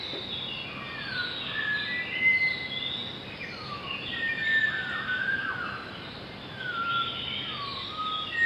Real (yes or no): yes